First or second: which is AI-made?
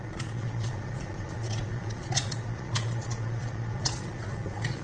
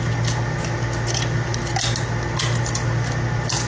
first